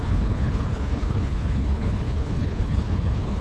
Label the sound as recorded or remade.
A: remade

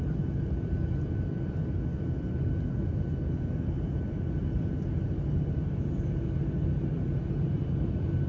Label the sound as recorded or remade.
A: recorded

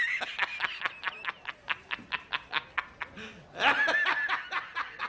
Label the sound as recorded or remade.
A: recorded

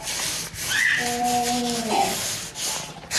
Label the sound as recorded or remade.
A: recorded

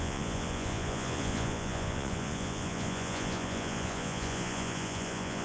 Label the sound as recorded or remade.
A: remade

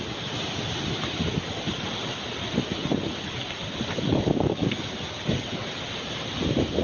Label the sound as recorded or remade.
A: recorded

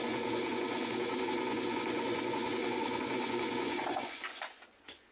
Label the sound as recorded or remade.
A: remade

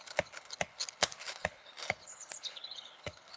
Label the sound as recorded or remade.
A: remade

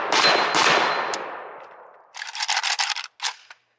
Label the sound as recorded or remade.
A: recorded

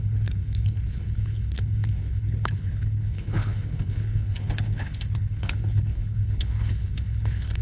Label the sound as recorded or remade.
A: remade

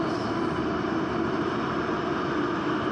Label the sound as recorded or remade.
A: recorded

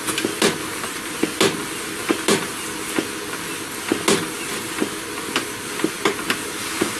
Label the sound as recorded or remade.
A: recorded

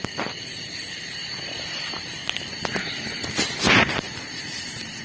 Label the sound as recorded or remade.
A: recorded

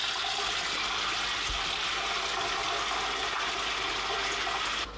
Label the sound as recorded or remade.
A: recorded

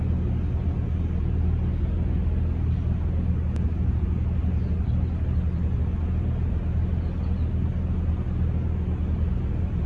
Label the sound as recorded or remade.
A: recorded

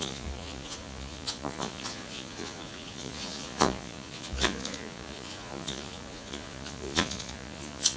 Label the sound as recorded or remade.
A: remade